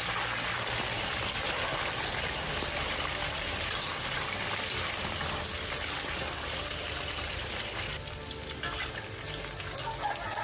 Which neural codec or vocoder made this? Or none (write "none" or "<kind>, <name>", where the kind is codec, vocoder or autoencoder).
none